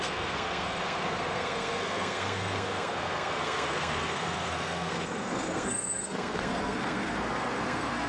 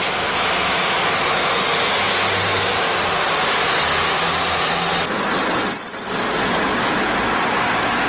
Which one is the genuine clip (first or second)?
second